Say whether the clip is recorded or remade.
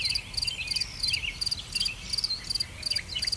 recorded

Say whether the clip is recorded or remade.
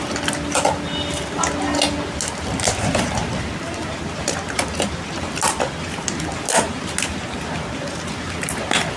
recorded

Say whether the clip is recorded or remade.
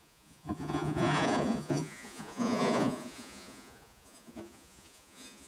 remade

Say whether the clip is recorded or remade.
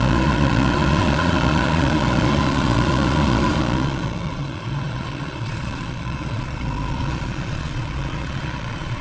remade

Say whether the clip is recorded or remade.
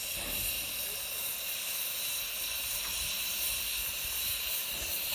recorded